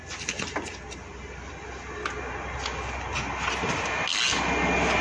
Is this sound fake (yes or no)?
no